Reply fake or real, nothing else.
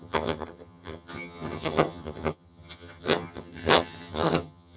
fake